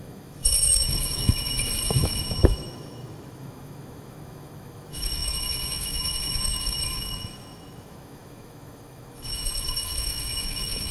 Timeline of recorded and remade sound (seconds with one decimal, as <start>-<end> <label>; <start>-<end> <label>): 0.0-10.9 remade